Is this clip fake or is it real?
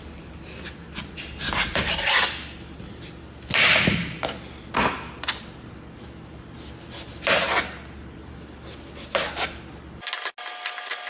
real